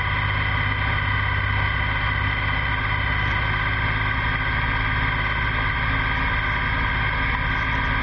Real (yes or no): yes